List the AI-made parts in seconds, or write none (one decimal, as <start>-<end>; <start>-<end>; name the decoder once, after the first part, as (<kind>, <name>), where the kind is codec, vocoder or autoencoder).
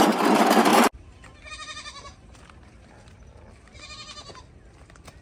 none